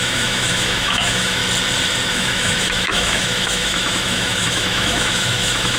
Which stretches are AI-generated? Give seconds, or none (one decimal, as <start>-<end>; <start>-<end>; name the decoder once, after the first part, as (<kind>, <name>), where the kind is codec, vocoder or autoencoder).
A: 0.0-1.4 (autoencoder, DAC-VAE); 2.1-5.8